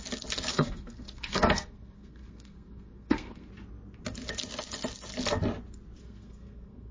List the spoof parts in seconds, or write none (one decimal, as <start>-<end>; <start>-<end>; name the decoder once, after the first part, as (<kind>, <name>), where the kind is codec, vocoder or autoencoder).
0.5-3.5 (codec, SNAC); 6.0-6.9